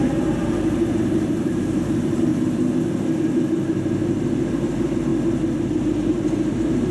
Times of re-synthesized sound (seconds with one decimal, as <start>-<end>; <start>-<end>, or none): 0.0-2.3; 4.5-5.1; 6.1-6.9